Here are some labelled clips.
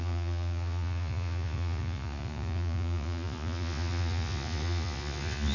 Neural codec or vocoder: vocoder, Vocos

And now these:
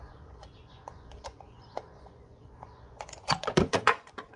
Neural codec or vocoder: vocoder, Vocos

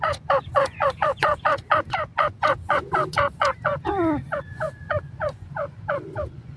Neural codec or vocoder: vocoder, Vocos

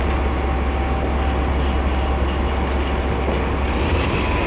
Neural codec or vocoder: none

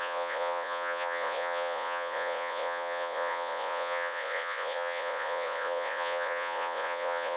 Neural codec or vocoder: vocoder, Vocos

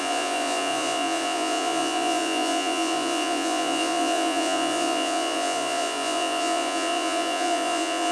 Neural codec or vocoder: vocoder, Vocos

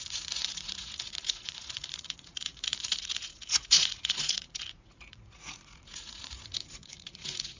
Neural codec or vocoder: vocoder, Vocos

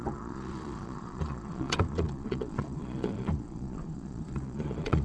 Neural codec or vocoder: vocoder, Vocos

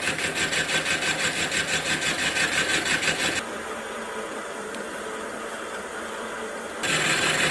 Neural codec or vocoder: none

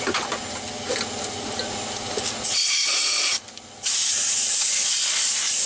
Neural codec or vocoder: none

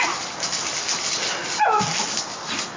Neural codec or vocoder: none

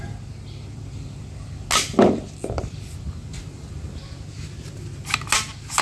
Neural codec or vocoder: none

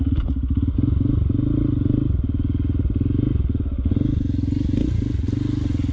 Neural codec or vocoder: none